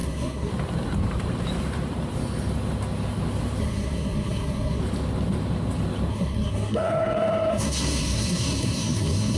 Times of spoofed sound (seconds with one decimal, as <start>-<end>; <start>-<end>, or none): 0.0-0.5; 3.6-4.8; 6.1-9.4